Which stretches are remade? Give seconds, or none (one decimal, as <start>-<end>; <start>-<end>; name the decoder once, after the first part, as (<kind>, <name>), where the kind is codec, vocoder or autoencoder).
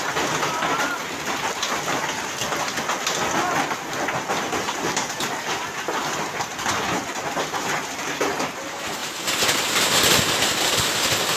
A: 1.0-2.0 (vocoder, BigVGAN v2); 2.4-3.4; 9.0-9.8